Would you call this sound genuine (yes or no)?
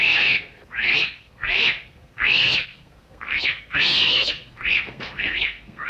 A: no